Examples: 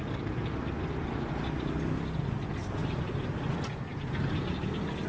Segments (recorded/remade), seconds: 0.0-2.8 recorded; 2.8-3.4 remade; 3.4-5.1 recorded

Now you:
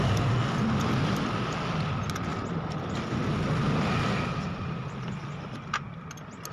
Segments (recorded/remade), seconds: 0.0-6.5 recorded

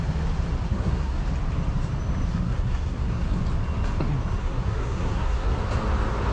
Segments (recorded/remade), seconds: 0.0-0.7 recorded; 0.7-1.2 remade; 1.2-2.3 recorded; 2.3-3.4 remade; 3.4-4.4 recorded; 4.4-5.6 remade; 5.6-6.3 recorded

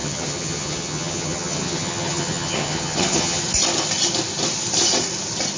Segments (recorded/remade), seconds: 0.0-3.4 remade; 3.4-5.6 recorded

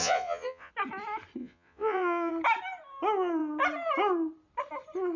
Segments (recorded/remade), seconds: 0.0-0.7 remade; 0.7-1.4 recorded; 1.4-2.3 remade; 2.3-5.2 recorded

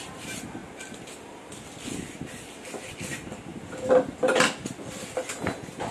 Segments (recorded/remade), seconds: 0.0-5.9 recorded

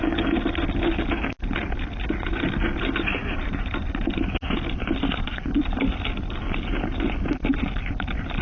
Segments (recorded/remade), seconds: 0.0-8.4 recorded